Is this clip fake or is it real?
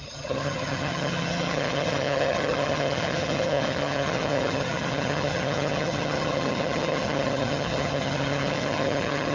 fake